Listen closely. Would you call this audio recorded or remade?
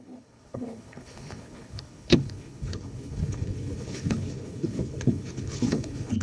remade